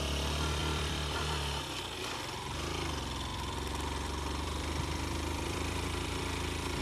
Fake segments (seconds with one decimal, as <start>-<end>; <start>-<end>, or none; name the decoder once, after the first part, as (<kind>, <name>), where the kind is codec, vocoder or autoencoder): 0.6-1.8 (vocoder, BigVGAN v2); 3.3-6.2